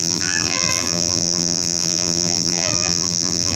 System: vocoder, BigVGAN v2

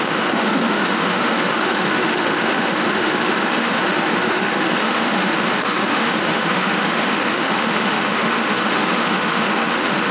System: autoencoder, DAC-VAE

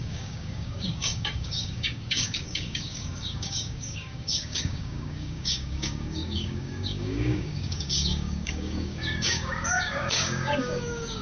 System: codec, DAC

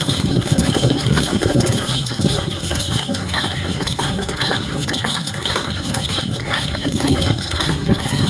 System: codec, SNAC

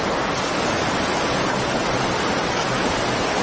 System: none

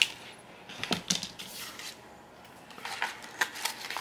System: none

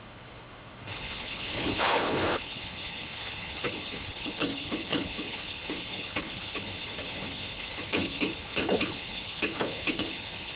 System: codec, HILCodec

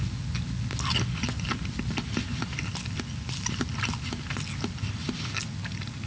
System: none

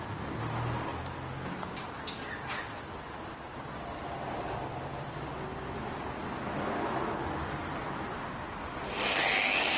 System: none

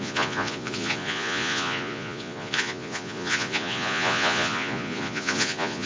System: vocoder, Vocos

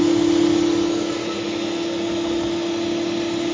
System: none